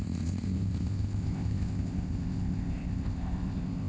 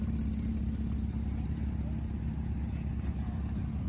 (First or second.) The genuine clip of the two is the second